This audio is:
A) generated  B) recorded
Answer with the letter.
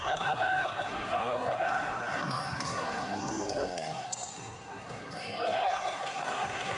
A